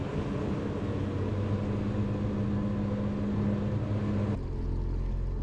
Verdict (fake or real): real